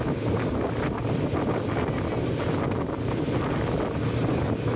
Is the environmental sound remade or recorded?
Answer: recorded